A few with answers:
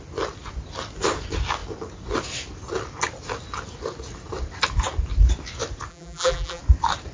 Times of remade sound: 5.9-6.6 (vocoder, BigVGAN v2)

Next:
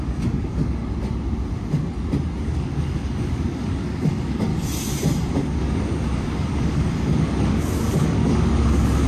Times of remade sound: 0.0-0.8 (codec, DAC); 2.4-4.5; 5.3-9.1